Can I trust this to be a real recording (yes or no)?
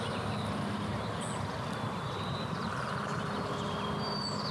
yes